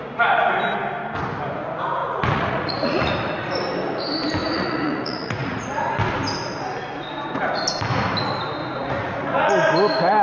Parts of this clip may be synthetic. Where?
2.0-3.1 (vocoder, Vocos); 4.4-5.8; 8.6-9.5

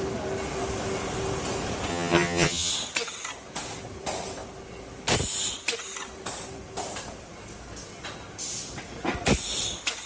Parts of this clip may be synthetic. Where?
1.9-2.7 (vocoder, HiFi-GAN)

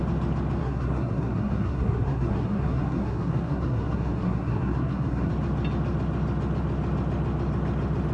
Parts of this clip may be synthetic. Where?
0.6-5.3 (codec, SNAC)

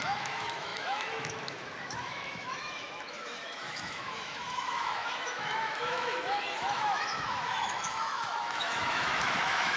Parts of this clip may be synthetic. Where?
0.0-9.8 (autoencoder, DAC-VAE)